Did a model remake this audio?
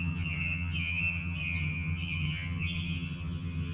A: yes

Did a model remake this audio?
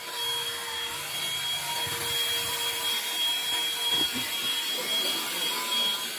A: no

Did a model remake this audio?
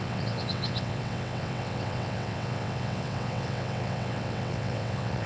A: yes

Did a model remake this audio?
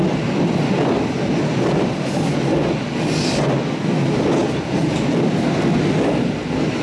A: no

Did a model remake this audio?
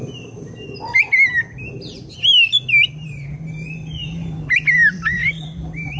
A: no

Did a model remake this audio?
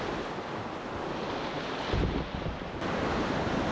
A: no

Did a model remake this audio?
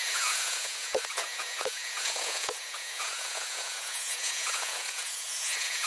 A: yes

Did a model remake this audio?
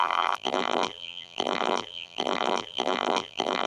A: yes